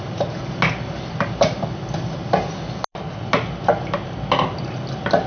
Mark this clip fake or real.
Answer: real